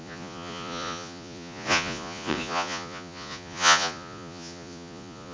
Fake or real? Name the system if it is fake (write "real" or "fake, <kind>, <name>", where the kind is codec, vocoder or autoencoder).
fake, vocoder, Vocos